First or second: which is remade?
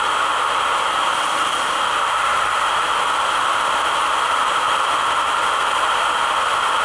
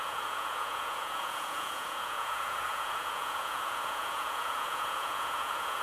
second